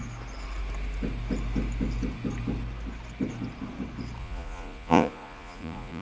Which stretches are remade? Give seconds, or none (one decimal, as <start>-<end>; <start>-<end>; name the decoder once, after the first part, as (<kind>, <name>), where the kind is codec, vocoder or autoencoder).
4.2-6.0 (vocoder, Vocos)